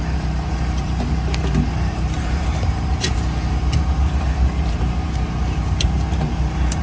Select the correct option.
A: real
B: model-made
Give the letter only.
B